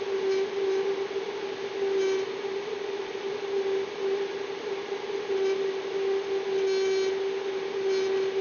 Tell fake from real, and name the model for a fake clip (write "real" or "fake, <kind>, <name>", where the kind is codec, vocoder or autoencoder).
real